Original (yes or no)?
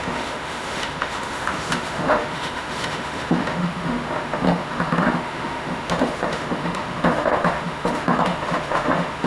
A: no